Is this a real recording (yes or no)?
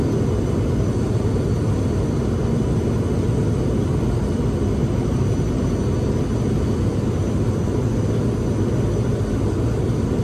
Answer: yes